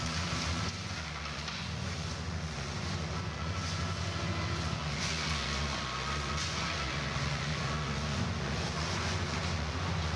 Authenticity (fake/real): fake